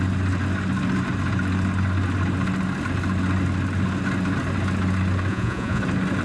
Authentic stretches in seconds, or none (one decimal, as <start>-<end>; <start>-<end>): 0.0-5.3; 5.8-6.2